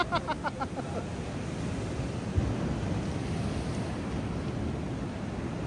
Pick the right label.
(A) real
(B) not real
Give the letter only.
A